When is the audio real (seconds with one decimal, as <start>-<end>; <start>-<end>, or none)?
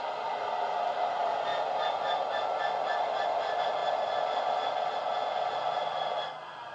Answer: 0.0-6.7